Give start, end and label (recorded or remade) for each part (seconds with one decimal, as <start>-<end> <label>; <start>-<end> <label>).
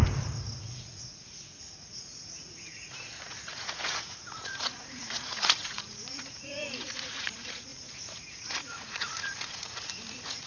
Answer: 0.0-0.7 recorded; 0.7-10.5 remade